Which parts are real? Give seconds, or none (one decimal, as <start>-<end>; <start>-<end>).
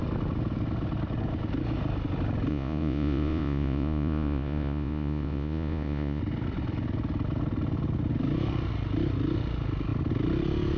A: 0.0-2.5; 6.2-10.8